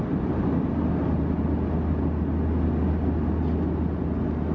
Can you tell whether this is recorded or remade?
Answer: recorded